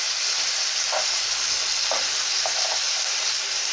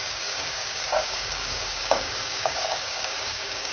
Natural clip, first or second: first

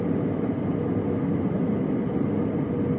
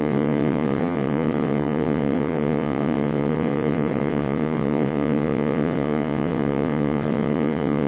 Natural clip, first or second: first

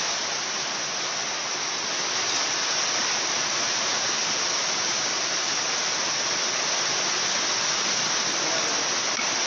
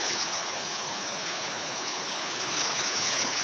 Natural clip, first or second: first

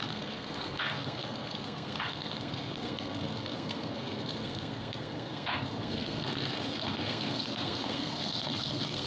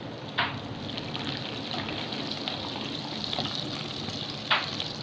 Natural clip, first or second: second